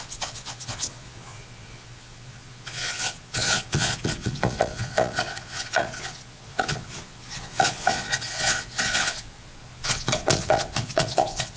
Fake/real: fake